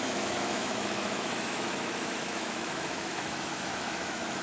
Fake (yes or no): yes